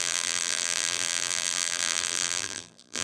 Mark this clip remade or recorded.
remade